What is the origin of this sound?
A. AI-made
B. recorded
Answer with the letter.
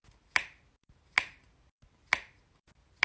B